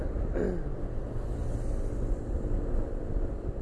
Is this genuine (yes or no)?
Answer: yes